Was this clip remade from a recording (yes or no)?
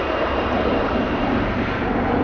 yes